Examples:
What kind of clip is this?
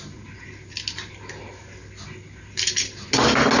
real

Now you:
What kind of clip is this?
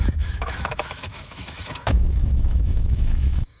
fake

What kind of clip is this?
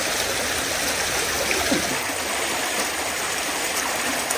real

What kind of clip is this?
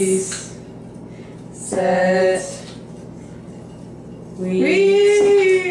real